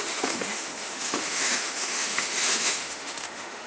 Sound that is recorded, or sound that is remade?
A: remade